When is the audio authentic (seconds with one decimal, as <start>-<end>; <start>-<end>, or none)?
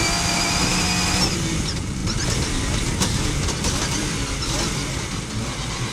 0.7-1.3